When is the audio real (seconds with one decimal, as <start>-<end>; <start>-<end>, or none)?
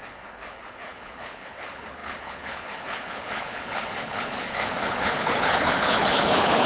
none